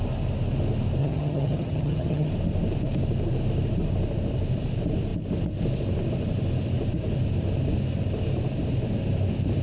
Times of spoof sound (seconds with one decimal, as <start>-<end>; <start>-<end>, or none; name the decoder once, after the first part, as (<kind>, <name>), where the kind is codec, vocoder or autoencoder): 1.0-2.3 (vocoder, HiFi-GAN)